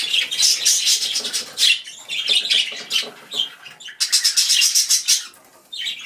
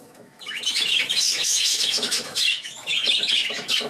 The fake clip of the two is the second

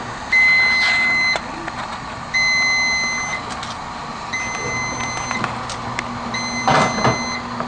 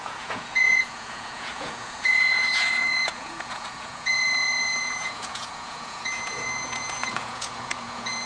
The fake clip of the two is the second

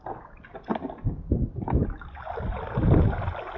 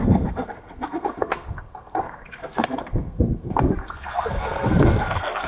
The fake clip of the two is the second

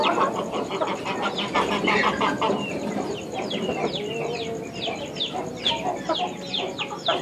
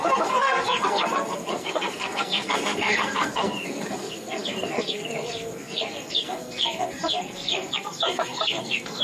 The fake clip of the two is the second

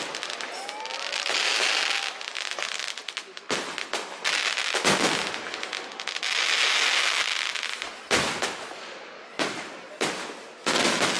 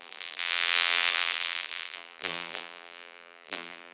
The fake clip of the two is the second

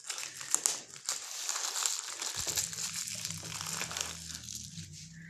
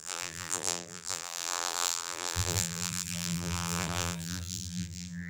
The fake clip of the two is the second